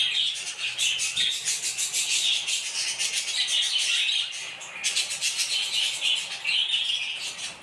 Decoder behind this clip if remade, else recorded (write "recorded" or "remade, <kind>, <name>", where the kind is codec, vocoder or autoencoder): recorded